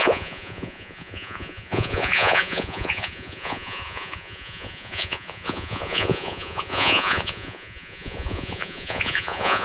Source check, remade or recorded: remade